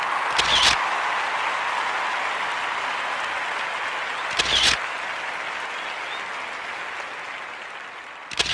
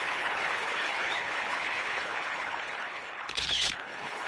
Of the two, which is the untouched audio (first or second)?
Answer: first